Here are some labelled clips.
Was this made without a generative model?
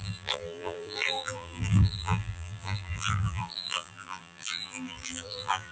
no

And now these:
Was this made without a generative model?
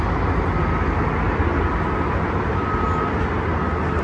yes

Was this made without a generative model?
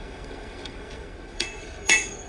no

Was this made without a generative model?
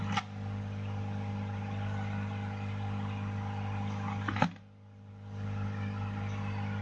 yes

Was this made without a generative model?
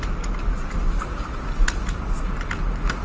yes